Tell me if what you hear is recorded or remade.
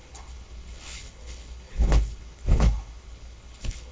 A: remade